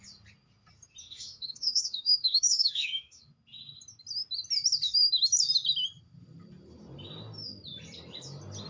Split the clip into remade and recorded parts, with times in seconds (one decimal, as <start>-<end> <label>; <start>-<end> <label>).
0.0-1.0 recorded; 1.0-3.2 remade; 3.2-8.7 recorded